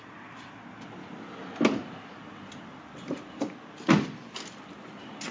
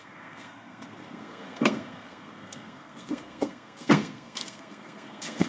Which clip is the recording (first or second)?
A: first